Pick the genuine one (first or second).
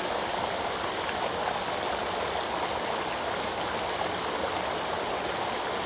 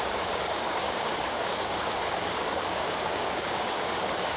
first